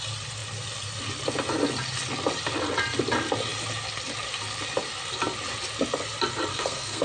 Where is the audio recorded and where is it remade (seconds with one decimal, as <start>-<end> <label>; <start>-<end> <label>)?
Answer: 0.0-6.5 recorded; 6.5-7.0 remade